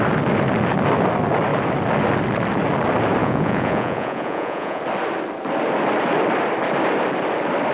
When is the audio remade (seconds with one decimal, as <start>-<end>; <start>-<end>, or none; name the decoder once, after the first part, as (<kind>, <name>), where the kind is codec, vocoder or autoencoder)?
3.2-4.8 (vocoder, Vocos)